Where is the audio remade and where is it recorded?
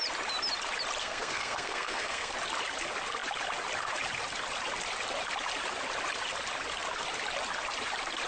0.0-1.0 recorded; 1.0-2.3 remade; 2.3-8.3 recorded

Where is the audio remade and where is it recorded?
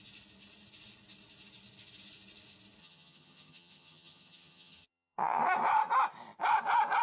0.0-2.8 recorded; 2.8-5.4 remade; 5.4-7.0 recorded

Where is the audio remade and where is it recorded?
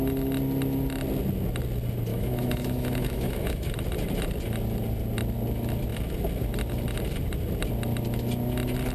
0.0-2.1 recorded; 2.1-3.7 remade; 3.7-8.9 recorded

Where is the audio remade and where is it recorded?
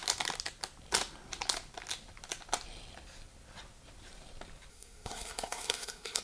0.0-4.7 recorded; 4.7-6.2 remade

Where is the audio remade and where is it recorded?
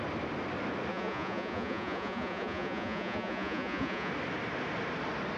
0.0-0.9 recorded; 0.9-4.1 remade; 4.1-5.4 recorded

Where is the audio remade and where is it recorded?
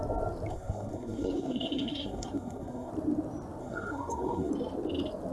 0.0-0.5 recorded; 0.5-2.9 remade; 2.9-3.6 recorded; 3.6-4.5 remade; 4.5-5.3 recorded